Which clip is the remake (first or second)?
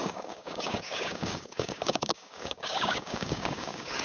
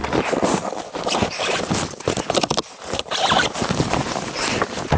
first